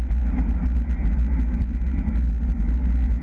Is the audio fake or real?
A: real